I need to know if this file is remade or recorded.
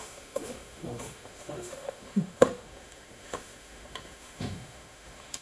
remade